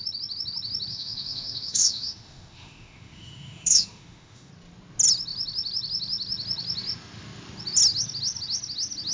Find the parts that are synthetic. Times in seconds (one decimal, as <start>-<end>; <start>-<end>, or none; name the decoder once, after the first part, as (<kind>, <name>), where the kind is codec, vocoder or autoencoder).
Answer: 0.9-4.5 (autoencoder, DAC-VAE)